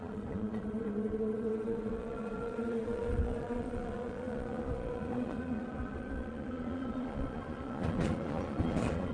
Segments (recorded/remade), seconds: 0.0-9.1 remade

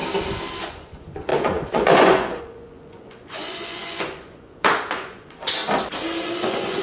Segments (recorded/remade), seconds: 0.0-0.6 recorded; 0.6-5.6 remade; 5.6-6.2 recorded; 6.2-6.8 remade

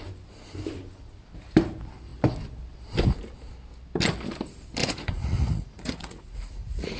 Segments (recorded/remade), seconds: 0.0-4.8 recorded; 4.8-7.0 remade

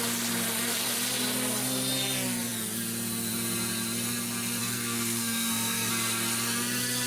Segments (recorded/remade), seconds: 0.0-4.6 recorded; 4.6-5.9 remade; 5.9-7.1 recorded

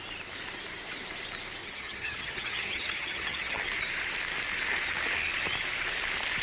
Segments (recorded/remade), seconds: 0.0-1.6 recorded; 1.6-3.6 remade; 3.6-6.4 recorded

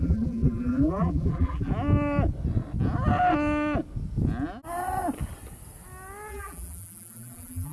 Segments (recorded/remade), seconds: 0.0-1.7 remade; 1.7-6.3 recorded; 6.3-7.7 remade